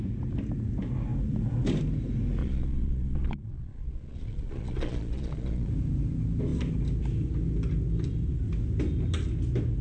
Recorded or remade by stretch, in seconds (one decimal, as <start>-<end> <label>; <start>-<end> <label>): 0.0-2.4 recorded; 2.4-5.7 remade; 5.7-9.8 recorded